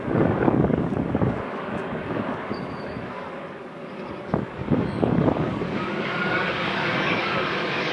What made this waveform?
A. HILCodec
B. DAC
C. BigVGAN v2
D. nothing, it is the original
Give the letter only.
B